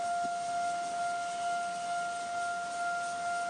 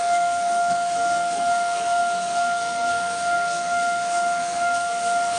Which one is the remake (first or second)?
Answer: second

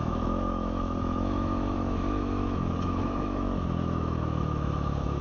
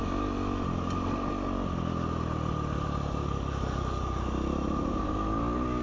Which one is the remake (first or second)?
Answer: first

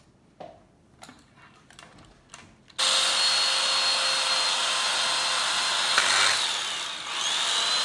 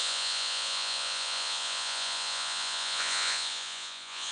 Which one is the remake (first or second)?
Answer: second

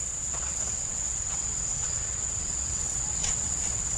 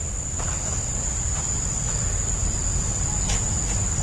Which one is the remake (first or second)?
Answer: first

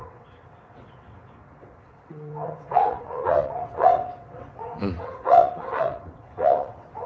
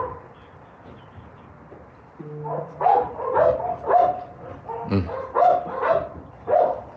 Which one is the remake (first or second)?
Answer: first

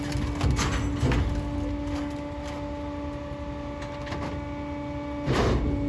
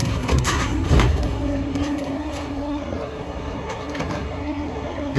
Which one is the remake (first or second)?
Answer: second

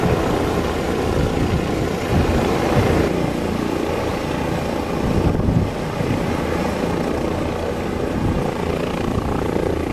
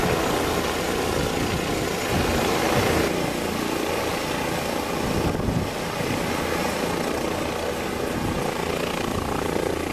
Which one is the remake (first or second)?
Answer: first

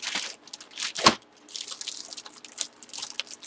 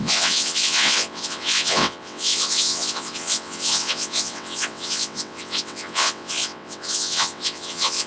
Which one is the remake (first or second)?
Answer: second